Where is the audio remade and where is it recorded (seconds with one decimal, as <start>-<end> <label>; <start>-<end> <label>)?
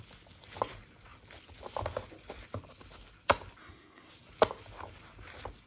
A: 0.0-3.6 recorded; 3.6-4.1 remade; 4.1-5.7 recorded